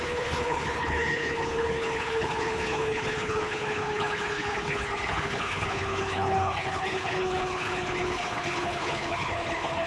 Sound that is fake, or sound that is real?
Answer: fake